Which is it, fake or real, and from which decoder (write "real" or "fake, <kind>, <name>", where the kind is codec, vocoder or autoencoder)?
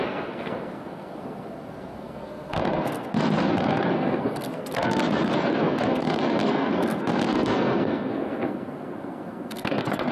fake, codec, SNAC